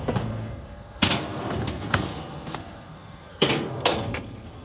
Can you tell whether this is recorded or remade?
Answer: remade